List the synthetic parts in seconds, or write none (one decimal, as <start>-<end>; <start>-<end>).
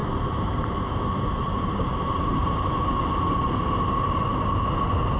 0.0-3.1